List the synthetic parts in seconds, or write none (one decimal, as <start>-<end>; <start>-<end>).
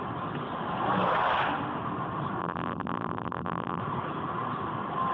2.4-3.8